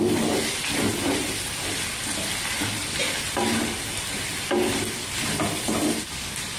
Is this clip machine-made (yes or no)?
no